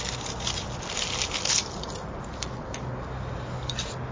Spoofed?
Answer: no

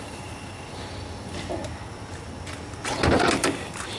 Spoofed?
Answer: no